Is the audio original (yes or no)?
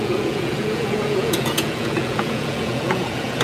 no